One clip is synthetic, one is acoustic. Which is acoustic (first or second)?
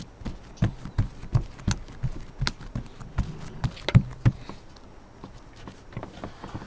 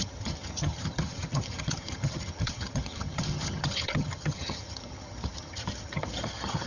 first